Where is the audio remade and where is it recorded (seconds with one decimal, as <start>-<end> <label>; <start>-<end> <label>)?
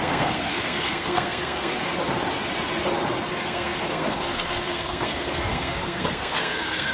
0.0-1.9 remade; 1.9-3.3 recorded; 3.3-6.9 remade